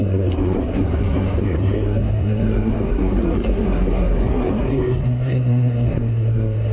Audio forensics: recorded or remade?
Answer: remade